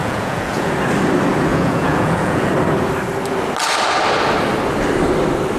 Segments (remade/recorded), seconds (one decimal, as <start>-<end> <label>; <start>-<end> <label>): 0.0-0.7 remade; 0.7-1.5 recorded; 1.5-2.5 remade; 2.5-5.6 recorded